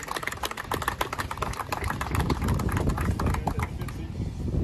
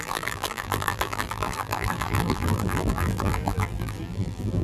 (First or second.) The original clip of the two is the first